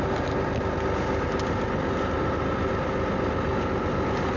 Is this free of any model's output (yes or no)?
yes